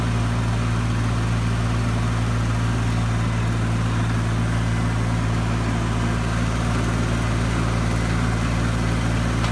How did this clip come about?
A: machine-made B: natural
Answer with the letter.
B